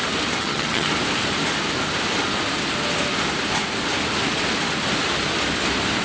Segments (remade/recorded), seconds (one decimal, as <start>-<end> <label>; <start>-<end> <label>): 0.0-0.4 recorded; 0.4-0.9 remade; 0.9-6.0 recorded